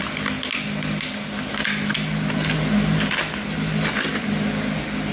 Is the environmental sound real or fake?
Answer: real